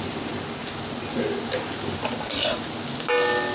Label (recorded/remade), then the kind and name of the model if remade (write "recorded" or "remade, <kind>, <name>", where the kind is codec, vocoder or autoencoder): recorded